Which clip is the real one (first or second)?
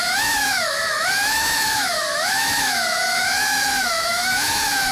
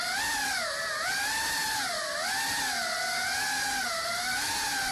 second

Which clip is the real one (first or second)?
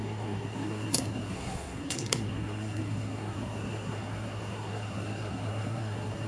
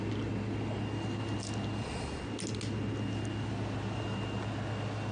second